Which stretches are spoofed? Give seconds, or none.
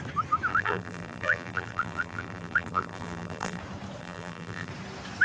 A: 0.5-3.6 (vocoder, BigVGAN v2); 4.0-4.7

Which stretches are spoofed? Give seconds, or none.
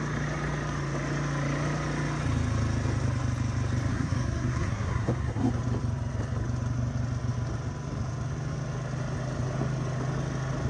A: 3.9-5.5 (codec, SNAC)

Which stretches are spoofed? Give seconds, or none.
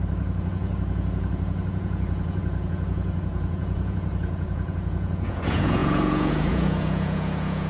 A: 0.0-7.7 (vocoder, Vocos)